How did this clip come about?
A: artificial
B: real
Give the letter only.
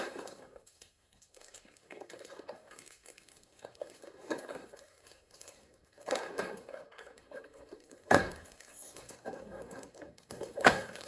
A